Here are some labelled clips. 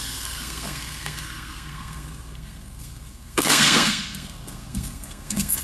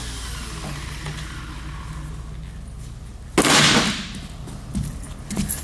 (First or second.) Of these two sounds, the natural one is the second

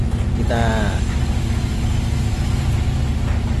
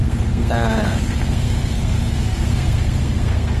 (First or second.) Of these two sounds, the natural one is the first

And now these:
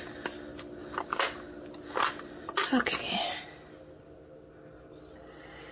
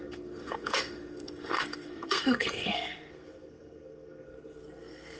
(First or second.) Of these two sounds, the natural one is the first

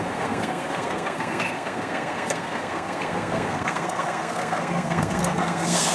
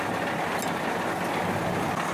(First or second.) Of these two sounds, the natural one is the second